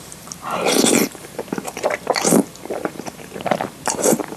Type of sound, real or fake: fake